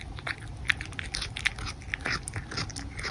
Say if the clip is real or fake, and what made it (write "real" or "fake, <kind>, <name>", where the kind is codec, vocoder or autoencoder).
real